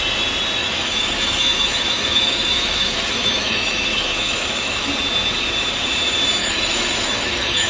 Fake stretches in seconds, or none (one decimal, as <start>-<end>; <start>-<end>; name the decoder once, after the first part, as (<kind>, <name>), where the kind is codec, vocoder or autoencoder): 0.6-4.9 (autoencoder, DAC-VAE); 6.4-7.7